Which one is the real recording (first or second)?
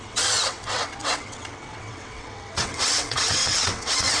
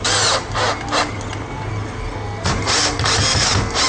second